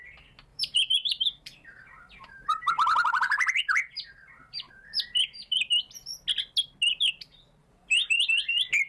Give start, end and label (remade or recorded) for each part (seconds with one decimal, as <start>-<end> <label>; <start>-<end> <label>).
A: 0.0-0.5 recorded; 0.5-4.7 remade; 4.7-7.6 recorded; 7.6-8.5 remade; 8.5-8.9 recorded